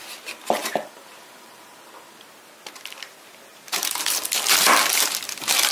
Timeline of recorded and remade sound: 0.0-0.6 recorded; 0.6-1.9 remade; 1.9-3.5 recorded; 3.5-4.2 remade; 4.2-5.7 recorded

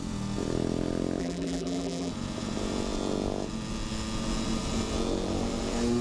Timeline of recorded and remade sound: 0.0-1.2 recorded; 1.2-2.1 remade; 2.1-6.0 recorded

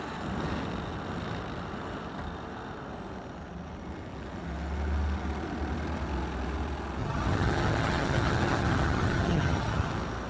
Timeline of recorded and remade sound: 0.0-7.0 recorded; 7.0-9.9 remade; 9.9-10.3 recorded

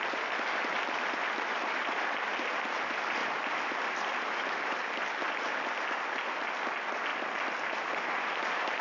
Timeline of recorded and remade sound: 0.0-3.2 recorded; 3.2-5.5 remade; 5.5-7.1 recorded; 7.1-7.8 remade; 7.8-8.8 recorded

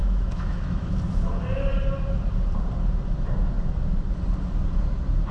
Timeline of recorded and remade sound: 0.0-0.9 remade; 0.9-5.3 recorded

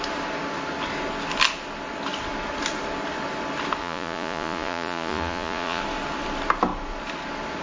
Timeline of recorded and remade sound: 0.0-3.8 recorded; 3.8-5.8 remade; 5.8-7.6 recorded

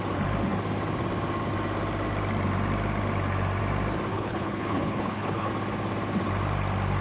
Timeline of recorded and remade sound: 0.0-4.1 recorded; 4.1-5.5 remade; 5.5-7.0 recorded

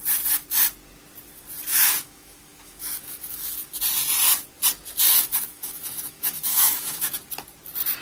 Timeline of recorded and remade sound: 0.0-1.7 recorded; 1.7-3.8 remade; 3.8-5.1 recorded; 5.1-7.1 remade; 7.1-8.0 recorded